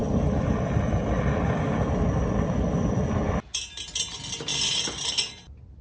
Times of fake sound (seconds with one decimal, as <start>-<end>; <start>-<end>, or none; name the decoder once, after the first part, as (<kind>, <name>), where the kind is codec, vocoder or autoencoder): 0.0-3.3 (vocoder, BigVGAN v2); 4.5-5.1